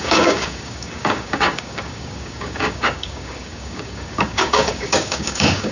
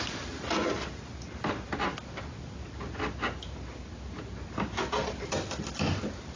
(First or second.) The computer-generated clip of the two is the first